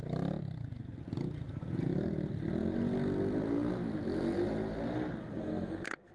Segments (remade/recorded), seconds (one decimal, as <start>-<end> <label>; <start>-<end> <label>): 0.0-5.2 recorded; 5.2-6.1 remade